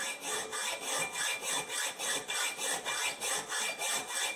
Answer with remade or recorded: recorded